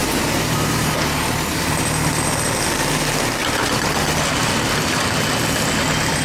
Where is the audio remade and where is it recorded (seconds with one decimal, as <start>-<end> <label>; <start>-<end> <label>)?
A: 0.0-0.9 remade; 0.9-6.2 recorded